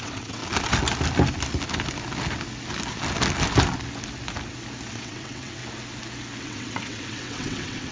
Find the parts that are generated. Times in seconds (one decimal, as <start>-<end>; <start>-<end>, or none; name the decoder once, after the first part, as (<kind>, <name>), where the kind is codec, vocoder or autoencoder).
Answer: 0.0-0.4 (vocoder, WaveNeXt); 4.9-5.6; 6.4-7.9